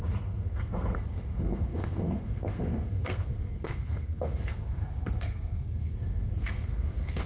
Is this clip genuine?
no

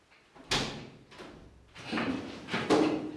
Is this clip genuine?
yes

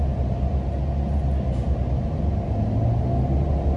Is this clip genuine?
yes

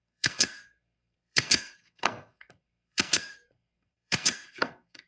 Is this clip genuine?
no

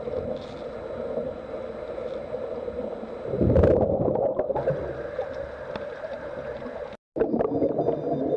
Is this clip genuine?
yes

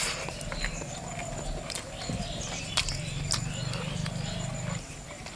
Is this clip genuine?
yes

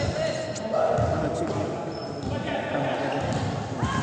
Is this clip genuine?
yes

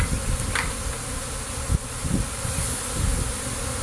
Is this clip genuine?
yes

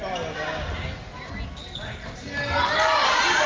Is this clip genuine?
yes